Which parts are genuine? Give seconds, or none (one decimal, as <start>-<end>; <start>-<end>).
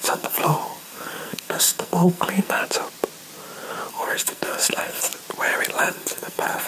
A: 2.6-3.9; 5.1-5.8